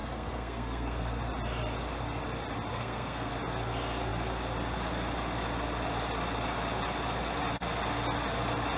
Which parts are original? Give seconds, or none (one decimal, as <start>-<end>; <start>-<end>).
1.2-2.7; 3.3-8.8